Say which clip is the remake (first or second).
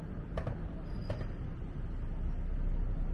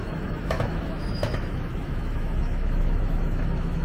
second